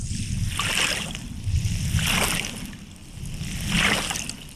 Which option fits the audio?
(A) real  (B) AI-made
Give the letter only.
A